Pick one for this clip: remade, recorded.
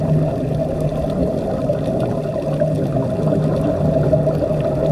recorded